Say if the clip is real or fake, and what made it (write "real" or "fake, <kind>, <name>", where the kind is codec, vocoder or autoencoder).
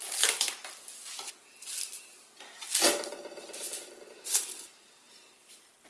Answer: real